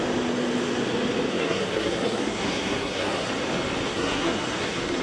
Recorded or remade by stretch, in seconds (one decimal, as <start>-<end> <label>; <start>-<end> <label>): 0.0-1.3 recorded; 1.3-3.3 remade; 3.3-3.9 recorded; 3.9-5.0 remade